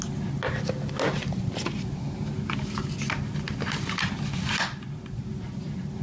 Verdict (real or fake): real